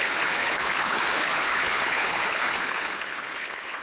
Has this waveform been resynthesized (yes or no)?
yes